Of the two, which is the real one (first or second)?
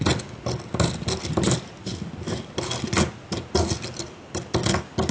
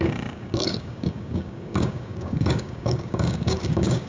first